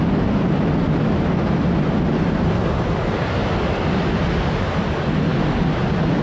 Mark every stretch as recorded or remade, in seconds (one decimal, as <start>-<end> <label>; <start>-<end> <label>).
0.0-6.2 recorded